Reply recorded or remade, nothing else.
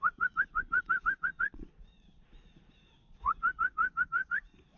remade